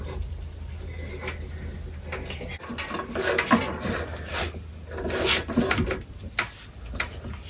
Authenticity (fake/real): real